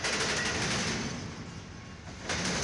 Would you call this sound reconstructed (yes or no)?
no